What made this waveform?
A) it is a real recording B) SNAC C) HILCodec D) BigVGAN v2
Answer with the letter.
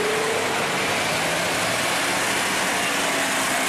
A